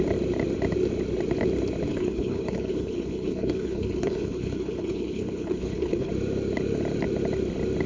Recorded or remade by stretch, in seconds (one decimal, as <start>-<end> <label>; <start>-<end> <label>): 0.0-1.9 recorded; 1.9-6.1 remade; 6.1-7.9 recorded